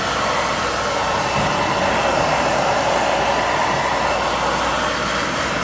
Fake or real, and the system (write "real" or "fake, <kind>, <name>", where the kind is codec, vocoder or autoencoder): real